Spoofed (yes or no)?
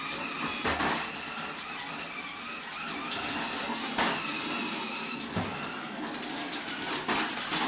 no